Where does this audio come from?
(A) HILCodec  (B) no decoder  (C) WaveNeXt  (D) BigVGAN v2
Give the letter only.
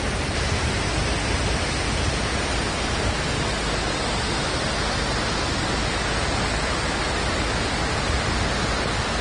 B